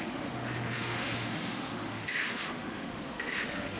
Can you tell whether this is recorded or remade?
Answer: remade